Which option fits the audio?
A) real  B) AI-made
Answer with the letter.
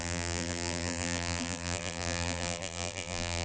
B